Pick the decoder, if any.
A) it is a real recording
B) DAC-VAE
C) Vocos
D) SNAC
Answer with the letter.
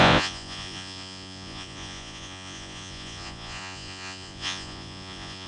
C